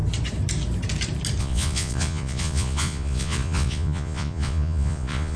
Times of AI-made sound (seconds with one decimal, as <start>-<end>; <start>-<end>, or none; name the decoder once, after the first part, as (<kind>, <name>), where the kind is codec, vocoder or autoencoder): 1.4-5.4 (vocoder, Vocos)